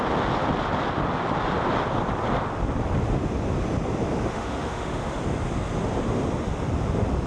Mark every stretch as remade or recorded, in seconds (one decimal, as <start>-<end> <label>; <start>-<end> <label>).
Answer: 0.0-4.3 recorded; 4.3-5.2 remade; 5.2-7.3 recorded